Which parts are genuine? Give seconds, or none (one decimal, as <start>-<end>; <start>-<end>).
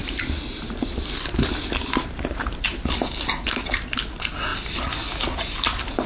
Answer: 0.0-6.1